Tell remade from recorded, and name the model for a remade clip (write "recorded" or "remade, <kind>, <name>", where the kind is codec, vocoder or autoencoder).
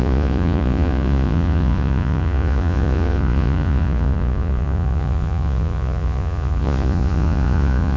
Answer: remade, vocoder, Vocos